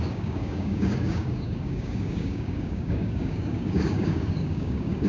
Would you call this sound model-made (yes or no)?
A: yes